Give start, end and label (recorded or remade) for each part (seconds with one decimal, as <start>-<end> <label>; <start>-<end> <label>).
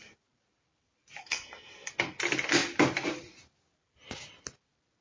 0.0-1.2 recorded; 1.2-1.9 remade; 1.9-5.0 recorded